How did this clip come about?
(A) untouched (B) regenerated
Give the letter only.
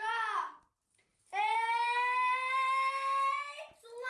A